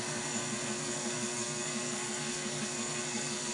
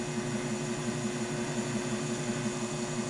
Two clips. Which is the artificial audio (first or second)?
first